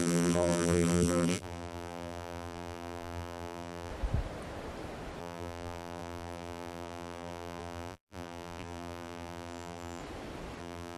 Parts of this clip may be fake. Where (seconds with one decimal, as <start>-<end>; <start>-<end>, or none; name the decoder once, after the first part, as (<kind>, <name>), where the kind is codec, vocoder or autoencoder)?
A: 0.0-3.9 (vocoder, BigVGAN v2); 5.2-10.0; 10.6-11.0